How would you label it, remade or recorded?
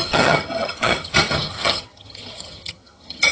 remade